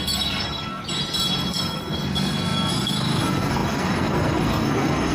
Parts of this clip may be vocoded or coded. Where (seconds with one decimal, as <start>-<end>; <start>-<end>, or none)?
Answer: 0.0-0.8; 1.5-5.1